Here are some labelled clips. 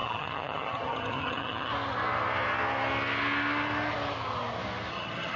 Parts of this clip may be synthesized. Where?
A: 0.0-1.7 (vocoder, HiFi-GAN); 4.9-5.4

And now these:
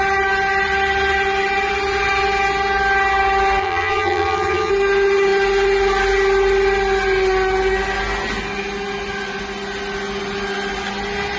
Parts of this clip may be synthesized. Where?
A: 3.6-4.7 (vocoder, HiFi-GAN)

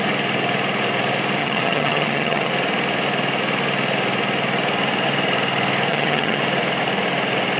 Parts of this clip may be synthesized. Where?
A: 1.4-2.5 (vocoder, HiFi-GAN); 5.9-6.4

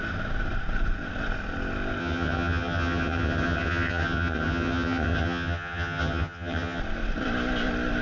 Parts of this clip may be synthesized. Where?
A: 2.0-6.8 (vocoder, HiFi-GAN)

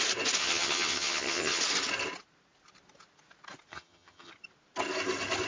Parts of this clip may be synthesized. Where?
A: 0.4-1.6 (vocoder, HiFi-GAN); 3.7-4.3